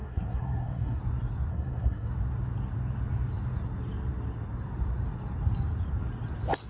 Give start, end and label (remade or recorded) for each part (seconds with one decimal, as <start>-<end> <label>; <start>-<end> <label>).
0.0-1.0 remade; 1.0-1.5 recorded; 1.5-2.1 remade; 2.1-6.7 recorded